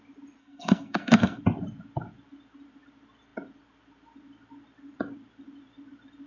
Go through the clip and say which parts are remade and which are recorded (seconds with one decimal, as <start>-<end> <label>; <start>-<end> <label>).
0.0-0.4 recorded; 0.4-1.4 remade; 1.4-6.3 recorded